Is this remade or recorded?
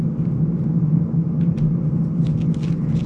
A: recorded